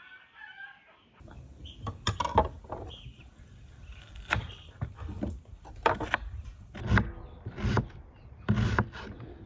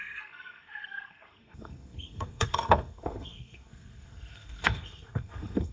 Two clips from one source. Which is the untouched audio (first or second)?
first